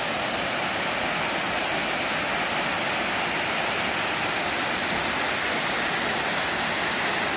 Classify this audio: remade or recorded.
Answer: recorded